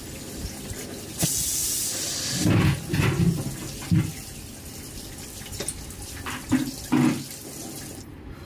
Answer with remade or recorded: recorded